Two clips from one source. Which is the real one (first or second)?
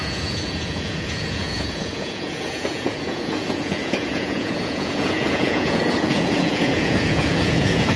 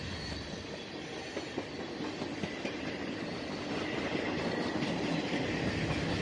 second